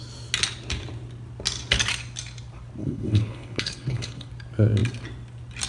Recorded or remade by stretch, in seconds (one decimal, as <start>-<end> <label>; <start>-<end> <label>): 0.0-2.8 recorded; 2.8-4.3 remade; 4.3-5.7 recorded